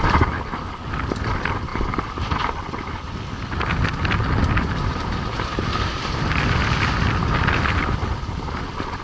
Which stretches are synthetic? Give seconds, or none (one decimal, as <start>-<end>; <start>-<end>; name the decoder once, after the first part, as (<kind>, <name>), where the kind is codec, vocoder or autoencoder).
none